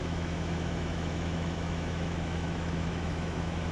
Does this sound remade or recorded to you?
remade